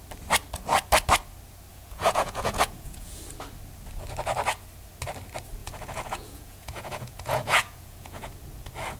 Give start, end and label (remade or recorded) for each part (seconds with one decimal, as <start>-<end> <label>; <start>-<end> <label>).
0.0-1.7 recorded; 1.7-3.2 remade; 3.2-5.6 recorded; 5.6-8.3 remade; 8.3-9.0 recorded

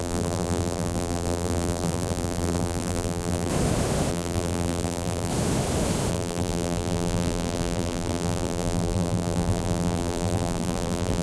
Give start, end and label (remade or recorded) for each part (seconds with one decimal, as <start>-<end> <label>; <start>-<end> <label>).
0.0-3.5 remade; 3.5-4.1 recorded; 4.1-5.3 remade; 5.3-6.1 recorded; 6.1-11.2 remade